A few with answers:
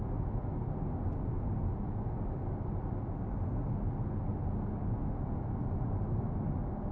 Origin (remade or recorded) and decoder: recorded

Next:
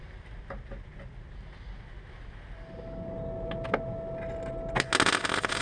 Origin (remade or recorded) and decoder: recorded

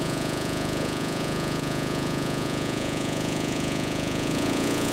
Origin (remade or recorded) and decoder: remade, vocoder, Vocos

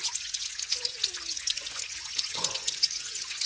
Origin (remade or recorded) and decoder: remade, vocoder, Vocos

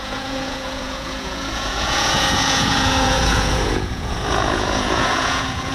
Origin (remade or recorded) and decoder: remade, vocoder, Vocos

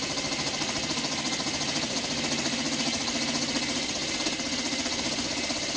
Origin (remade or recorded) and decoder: recorded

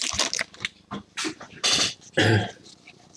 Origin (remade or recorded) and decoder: recorded